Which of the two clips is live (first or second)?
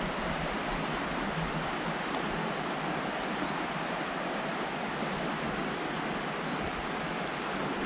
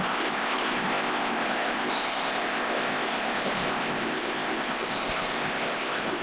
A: first